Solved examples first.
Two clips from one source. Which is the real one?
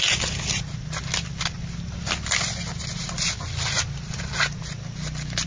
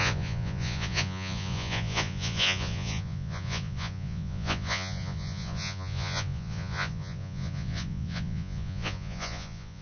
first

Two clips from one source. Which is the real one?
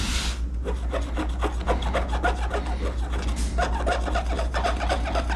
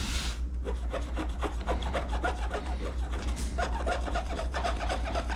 first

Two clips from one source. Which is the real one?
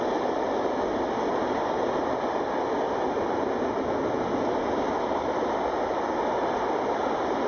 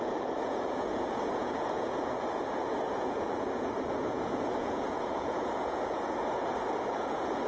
first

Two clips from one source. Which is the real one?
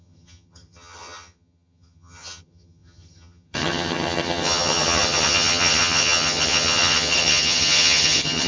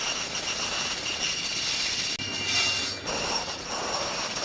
second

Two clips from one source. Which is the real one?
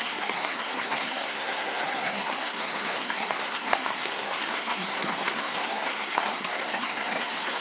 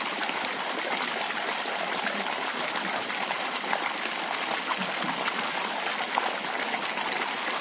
second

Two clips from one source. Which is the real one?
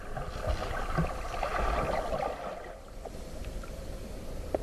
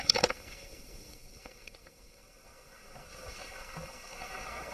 first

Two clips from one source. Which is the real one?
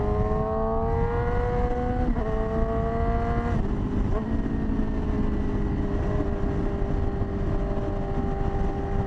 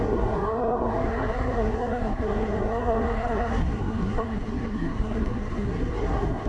first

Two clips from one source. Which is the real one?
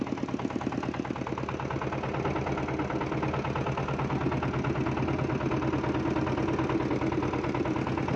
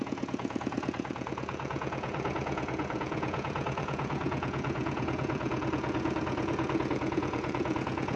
first